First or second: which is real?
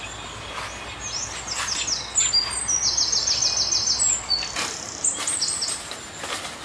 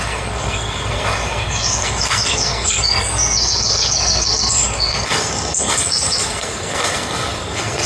first